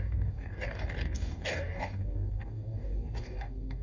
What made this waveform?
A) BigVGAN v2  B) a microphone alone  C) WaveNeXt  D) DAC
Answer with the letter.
D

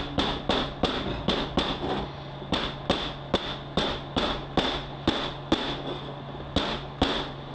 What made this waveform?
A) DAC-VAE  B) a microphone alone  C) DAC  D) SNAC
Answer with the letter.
B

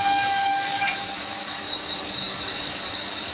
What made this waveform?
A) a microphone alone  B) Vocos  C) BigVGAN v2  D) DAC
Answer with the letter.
D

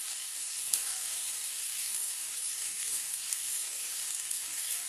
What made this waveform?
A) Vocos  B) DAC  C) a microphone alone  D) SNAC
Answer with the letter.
B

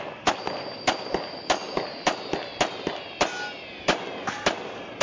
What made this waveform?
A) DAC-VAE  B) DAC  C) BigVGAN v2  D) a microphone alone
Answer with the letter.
D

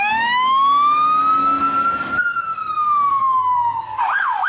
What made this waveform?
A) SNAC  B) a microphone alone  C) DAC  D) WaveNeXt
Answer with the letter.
C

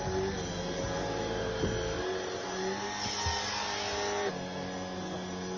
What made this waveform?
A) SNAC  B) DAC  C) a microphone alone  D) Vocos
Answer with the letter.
C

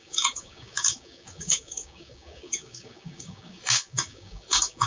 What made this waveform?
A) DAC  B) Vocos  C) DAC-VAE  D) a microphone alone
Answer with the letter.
A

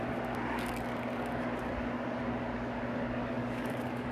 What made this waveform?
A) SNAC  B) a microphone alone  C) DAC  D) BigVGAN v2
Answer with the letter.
C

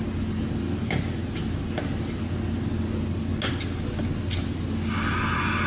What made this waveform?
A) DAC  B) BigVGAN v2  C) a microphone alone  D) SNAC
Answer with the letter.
C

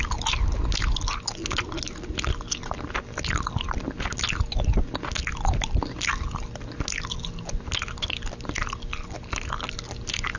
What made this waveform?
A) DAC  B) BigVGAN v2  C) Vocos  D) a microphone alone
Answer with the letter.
D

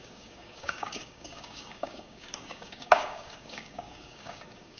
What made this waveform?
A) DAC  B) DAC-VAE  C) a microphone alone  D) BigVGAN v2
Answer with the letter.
A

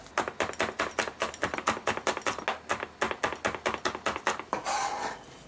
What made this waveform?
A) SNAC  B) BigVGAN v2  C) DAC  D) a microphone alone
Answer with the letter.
D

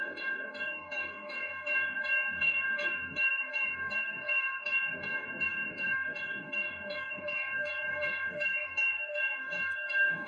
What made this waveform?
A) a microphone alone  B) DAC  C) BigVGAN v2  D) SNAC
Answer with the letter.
B